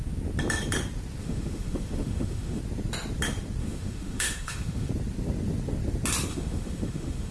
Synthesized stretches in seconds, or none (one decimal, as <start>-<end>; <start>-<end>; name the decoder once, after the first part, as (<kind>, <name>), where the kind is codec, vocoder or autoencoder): 1.2-2.6 (autoencoder, DAC-VAE); 3.6-4.9; 6.3-7.3